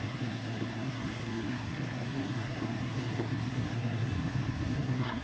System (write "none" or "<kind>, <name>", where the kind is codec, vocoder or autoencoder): codec, SNAC